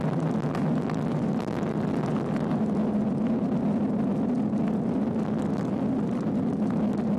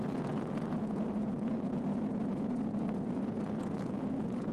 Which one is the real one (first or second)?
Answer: first